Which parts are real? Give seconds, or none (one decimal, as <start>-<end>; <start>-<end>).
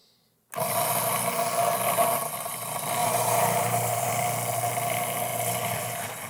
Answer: 0.0-3.0; 4.1-6.3